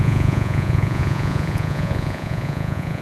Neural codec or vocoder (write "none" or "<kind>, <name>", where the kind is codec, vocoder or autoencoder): vocoder, Vocos